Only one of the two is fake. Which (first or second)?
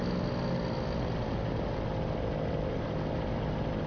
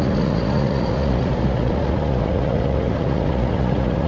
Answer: second